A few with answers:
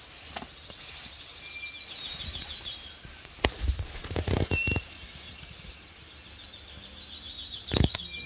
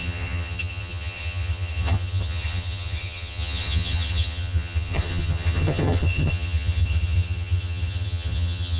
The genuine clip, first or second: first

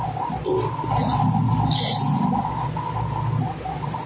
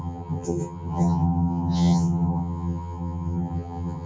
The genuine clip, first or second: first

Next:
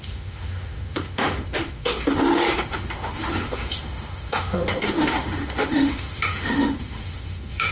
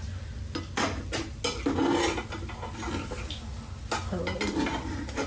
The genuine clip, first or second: second